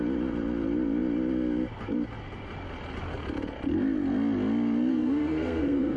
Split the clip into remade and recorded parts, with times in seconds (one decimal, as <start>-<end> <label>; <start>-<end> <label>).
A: 0.0-4.9 recorded; 4.9-6.0 remade